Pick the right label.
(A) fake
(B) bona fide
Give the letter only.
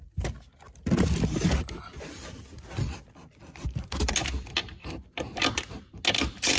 B